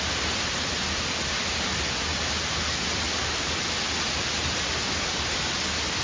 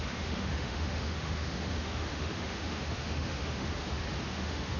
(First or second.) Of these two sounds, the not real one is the second